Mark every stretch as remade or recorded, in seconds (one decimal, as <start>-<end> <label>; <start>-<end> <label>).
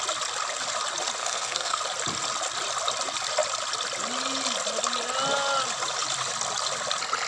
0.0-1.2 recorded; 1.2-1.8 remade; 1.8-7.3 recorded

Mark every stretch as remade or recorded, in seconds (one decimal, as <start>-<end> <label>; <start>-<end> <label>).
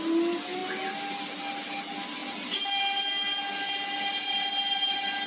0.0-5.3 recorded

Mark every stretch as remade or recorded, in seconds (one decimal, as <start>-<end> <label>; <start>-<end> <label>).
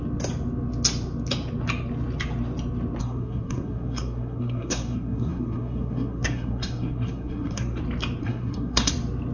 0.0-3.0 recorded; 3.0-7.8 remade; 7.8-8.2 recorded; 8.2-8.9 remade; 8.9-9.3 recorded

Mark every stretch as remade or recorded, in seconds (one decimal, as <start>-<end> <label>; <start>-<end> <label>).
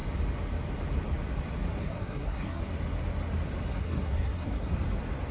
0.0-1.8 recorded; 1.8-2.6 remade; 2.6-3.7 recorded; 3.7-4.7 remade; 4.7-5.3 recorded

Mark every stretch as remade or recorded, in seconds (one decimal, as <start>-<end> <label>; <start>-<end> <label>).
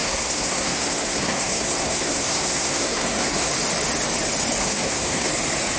0.0-3.5 remade; 3.5-4.6 recorded; 4.6-5.3 remade; 5.3-5.8 recorded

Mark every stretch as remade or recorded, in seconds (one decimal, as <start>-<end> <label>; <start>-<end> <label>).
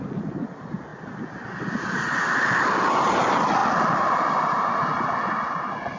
0.0-6.0 recorded